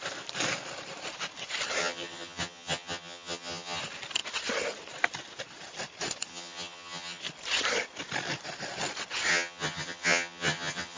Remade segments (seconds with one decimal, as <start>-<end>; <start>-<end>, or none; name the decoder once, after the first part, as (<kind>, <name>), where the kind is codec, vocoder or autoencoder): 1.8-3.8 (vocoder, HiFi-GAN); 6.3-7.2; 9.3-11.0